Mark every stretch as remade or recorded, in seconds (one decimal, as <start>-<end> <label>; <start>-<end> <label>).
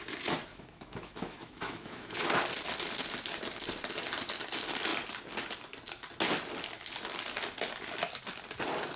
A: 0.0-0.5 recorded; 0.5-2.4 remade; 2.4-9.0 recorded